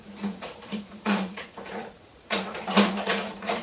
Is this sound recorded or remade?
remade